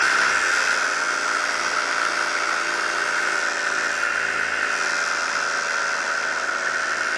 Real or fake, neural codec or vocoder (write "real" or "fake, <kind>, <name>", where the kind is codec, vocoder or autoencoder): real